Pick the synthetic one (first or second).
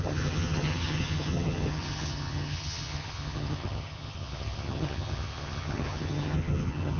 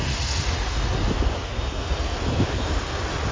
first